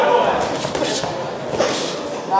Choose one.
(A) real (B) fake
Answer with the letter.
A